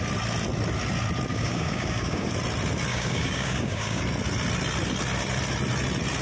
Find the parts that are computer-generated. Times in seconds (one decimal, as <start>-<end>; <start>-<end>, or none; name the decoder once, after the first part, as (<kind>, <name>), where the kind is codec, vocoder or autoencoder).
1.3-2.3 (codec, DAC); 2.9-4.0